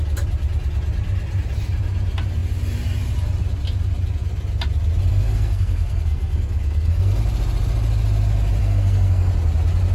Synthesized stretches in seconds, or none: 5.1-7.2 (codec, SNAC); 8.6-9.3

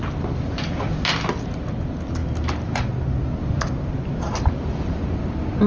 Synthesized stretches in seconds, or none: none